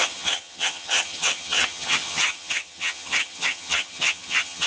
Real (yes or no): no